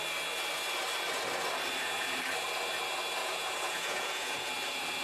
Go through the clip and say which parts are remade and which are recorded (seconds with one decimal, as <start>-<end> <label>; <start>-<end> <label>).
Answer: 0.0-3.2 recorded; 3.2-4.5 remade; 4.5-5.0 recorded